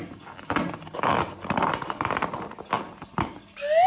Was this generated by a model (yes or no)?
no